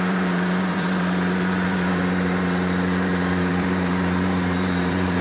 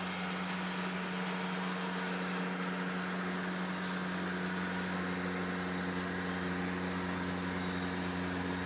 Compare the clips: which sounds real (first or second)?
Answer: second